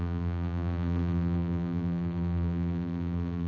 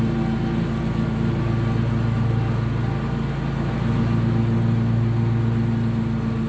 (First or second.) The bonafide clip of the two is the second